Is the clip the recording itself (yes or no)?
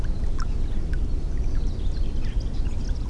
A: yes